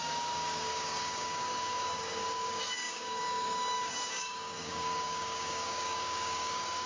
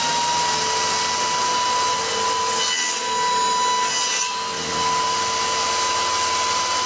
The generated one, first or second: first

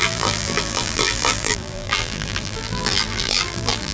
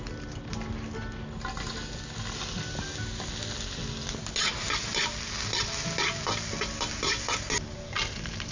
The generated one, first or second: first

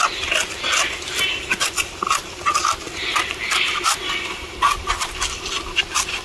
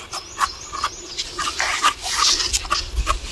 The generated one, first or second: first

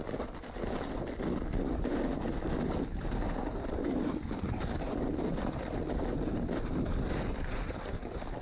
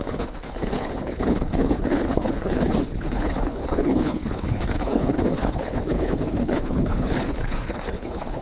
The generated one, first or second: second